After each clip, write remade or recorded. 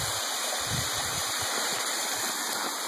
recorded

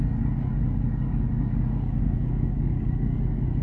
remade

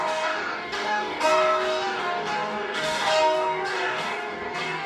remade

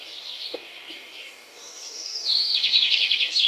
remade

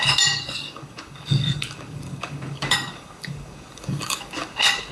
remade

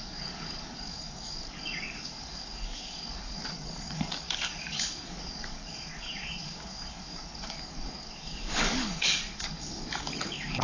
remade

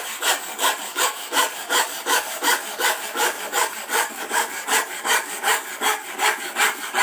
remade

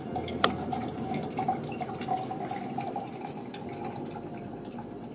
recorded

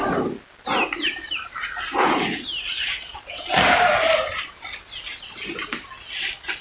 recorded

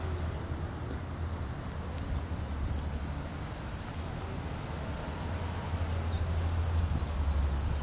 recorded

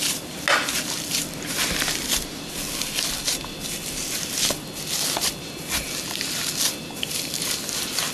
recorded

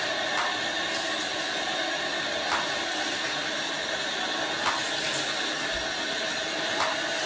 recorded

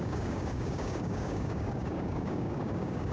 remade